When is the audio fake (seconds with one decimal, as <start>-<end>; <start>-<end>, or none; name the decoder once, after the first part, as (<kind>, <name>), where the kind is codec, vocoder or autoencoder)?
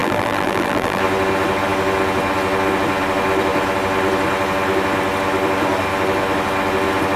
0.0-1.0 (vocoder, BigVGAN v2)